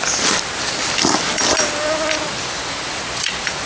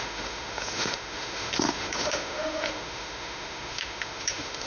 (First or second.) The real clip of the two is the first